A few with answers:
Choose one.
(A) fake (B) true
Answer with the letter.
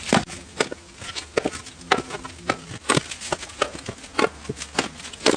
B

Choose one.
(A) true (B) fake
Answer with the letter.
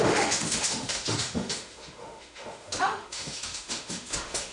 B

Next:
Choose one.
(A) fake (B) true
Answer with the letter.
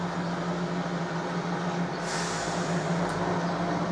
B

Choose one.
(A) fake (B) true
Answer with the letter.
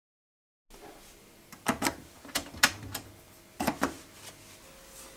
B